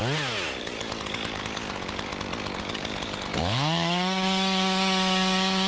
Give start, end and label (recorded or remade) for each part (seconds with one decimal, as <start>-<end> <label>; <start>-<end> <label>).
0.0-0.6 recorded; 0.6-2.1 remade; 2.1-2.6 recorded; 2.6-5.7 remade